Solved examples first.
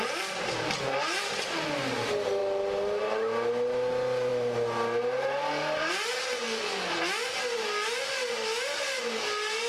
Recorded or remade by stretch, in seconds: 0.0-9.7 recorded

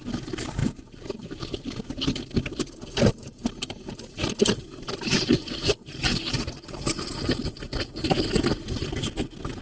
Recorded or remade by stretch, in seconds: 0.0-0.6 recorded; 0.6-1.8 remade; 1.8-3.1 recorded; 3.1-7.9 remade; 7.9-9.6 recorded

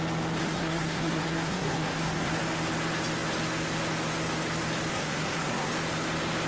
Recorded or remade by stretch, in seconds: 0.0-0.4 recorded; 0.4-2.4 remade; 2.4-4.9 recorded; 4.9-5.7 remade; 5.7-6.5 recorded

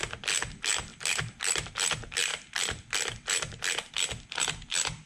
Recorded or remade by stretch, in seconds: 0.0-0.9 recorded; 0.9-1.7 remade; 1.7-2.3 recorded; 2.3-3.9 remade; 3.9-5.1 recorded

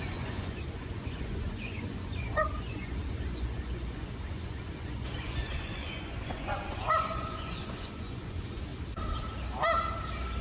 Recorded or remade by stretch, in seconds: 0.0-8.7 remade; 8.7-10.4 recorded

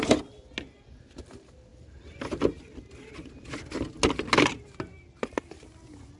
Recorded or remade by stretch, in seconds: 0.0-6.2 recorded

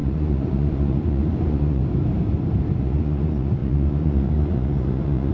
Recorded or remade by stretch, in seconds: 0.0-1.8 remade; 1.8-2.8 recorded; 2.8-5.3 remade

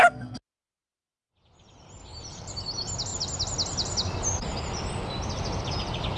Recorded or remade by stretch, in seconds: 0.0-2.1 recorded; 2.1-2.6 remade; 2.6-6.2 recorded